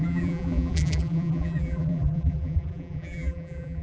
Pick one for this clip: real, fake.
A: fake